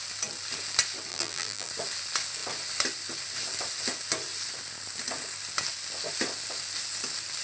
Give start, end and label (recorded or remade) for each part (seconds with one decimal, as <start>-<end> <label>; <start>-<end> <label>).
0.0-1.1 recorded; 1.1-1.7 remade; 1.7-7.4 recorded